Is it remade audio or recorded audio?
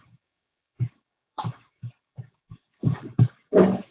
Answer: remade